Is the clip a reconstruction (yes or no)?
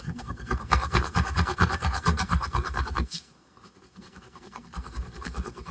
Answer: yes